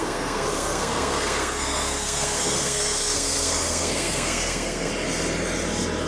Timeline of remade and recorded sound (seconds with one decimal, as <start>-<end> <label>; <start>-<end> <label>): 0.0-4.9 remade; 4.9-6.1 recorded